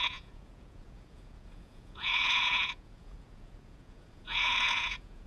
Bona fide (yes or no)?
no